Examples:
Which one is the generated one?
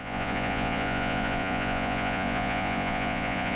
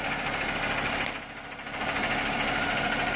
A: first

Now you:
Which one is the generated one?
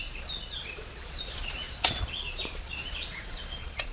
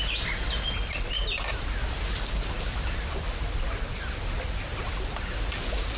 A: first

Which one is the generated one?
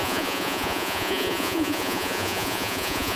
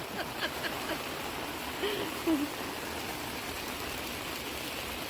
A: first